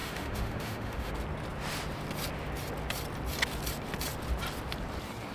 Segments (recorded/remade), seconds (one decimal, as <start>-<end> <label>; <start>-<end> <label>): 0.0-1.1 remade; 1.1-5.3 recorded